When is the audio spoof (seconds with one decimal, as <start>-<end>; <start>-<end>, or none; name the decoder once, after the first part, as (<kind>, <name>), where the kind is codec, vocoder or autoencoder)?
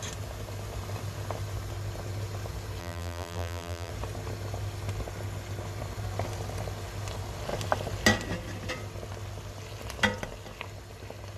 2.8-3.9 (vocoder, BigVGAN v2)